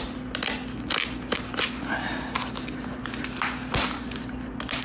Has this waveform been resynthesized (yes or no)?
no